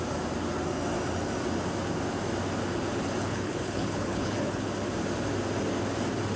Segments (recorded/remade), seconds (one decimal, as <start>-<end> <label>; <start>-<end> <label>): 0.0-3.2 recorded; 3.2-4.6 remade; 4.6-6.4 recorded